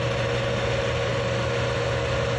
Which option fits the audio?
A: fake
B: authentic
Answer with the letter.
B